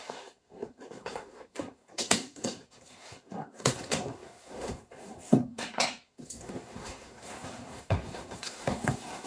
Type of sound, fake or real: fake